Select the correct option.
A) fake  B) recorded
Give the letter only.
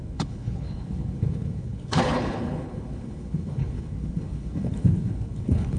A